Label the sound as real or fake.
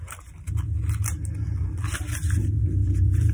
real